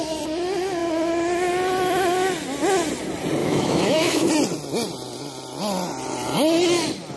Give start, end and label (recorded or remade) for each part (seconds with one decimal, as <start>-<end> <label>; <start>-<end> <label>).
0.0-3.4 recorded; 3.4-4.3 remade; 4.3-7.2 recorded